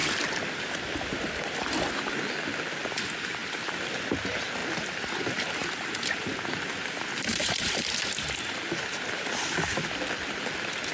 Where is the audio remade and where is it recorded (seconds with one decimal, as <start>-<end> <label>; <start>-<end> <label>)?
0.0-3.4 recorded; 3.4-4.1 remade; 4.1-4.6 recorded; 4.6-5.2 remade; 5.2-6.8 recorded; 6.8-10.9 remade

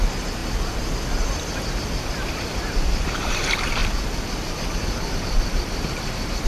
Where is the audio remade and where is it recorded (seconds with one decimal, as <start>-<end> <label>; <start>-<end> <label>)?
0.0-0.4 remade; 0.4-2.3 recorded; 2.3-3.8 remade; 3.8-5.2 recorded; 5.2-6.5 remade